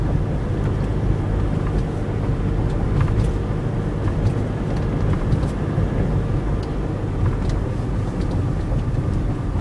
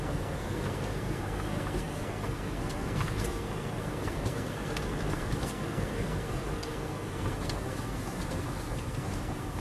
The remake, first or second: second